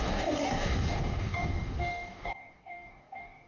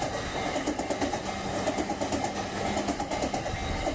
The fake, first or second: first